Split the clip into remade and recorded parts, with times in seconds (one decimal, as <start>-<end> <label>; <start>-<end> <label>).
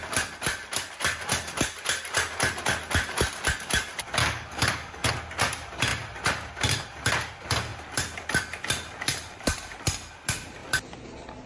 0.0-4.2 recorded; 4.2-5.1 remade; 5.1-11.5 recorded